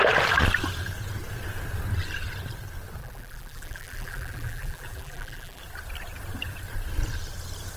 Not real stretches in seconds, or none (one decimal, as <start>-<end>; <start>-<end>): 3.0-5.6